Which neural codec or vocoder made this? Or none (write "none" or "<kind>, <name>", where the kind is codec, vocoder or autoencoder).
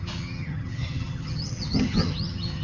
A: vocoder, HiFi-GAN